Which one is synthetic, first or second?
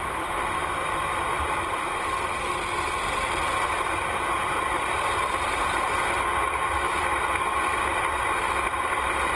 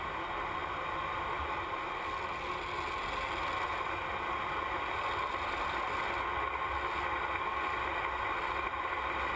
first